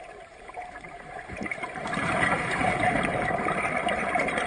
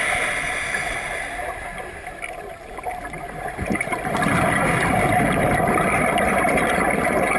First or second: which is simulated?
first